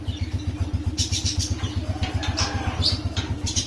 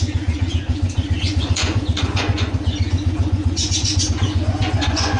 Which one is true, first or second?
first